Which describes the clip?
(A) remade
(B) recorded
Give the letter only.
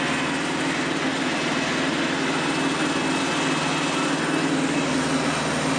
B